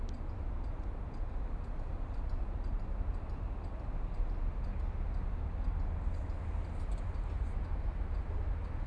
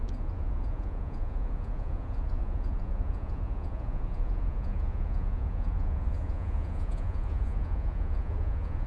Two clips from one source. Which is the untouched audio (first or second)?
first